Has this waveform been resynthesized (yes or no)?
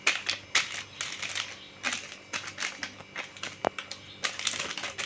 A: no